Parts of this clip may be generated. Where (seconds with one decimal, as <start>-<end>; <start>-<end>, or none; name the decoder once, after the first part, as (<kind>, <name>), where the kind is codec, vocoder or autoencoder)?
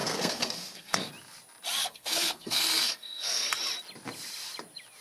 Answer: 0.0-1.1 (codec, SNAC); 1.8-3.5